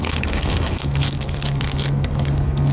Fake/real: fake